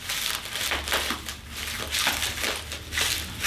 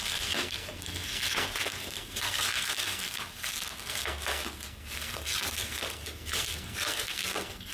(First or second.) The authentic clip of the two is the first